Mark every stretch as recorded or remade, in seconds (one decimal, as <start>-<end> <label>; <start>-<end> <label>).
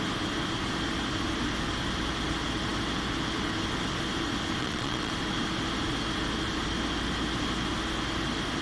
0.0-4.6 recorded; 4.6-5.1 remade; 5.1-8.6 recorded